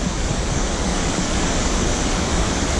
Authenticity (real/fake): fake